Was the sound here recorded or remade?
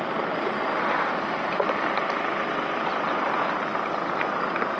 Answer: recorded